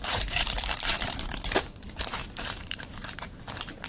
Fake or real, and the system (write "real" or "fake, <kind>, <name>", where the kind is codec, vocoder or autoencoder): fake, vocoder, BigVGAN v2